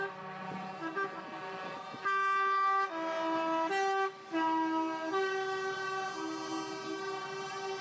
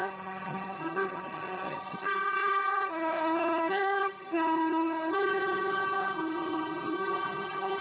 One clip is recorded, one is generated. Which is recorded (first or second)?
first